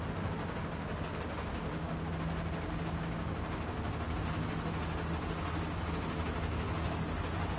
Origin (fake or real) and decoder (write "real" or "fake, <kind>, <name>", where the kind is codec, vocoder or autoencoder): real